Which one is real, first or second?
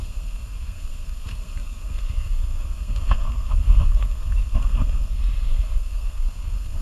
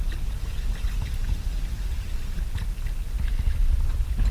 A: second